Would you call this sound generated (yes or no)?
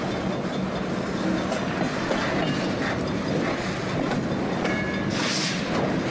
no